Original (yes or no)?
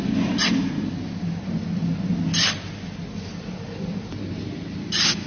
yes